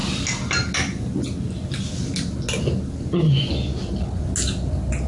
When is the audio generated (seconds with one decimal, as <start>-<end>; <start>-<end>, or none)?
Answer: none